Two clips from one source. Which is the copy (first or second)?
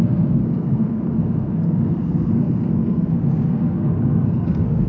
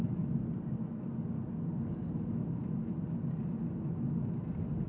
first